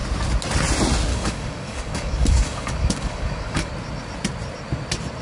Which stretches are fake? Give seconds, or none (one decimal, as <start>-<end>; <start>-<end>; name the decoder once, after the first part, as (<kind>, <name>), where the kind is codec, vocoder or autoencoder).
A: 1.1-3.7 (codec, DAC)